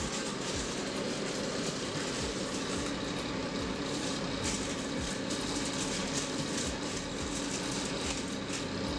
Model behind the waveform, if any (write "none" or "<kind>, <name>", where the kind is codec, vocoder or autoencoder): none